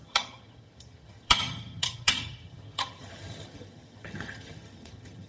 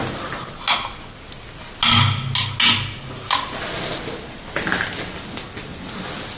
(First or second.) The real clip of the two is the second